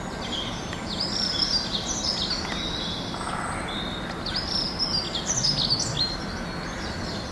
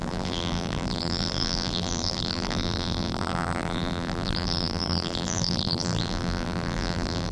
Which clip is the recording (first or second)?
first